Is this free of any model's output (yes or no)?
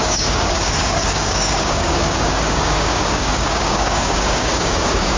no